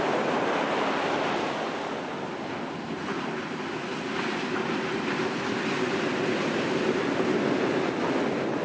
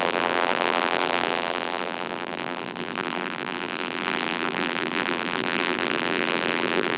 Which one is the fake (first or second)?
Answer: second